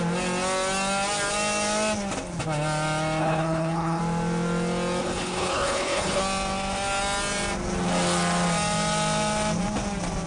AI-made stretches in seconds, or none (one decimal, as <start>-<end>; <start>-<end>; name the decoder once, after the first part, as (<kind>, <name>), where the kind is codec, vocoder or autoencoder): 3.2-4.0 (codec, HILCodec); 5.0-6.2